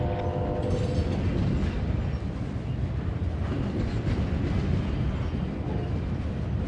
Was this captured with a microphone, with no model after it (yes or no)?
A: yes